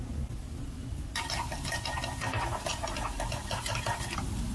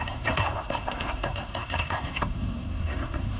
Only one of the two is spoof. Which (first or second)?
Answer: second